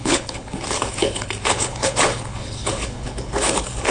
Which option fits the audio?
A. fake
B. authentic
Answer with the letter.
A